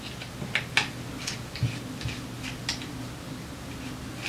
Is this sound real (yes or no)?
yes